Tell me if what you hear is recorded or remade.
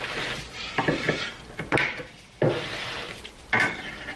recorded